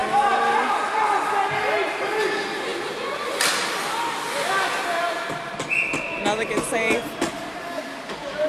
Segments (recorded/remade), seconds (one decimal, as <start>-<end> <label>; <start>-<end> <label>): 0.0-8.5 recorded